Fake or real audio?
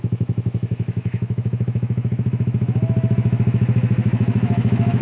fake